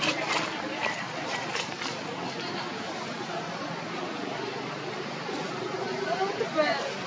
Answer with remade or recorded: recorded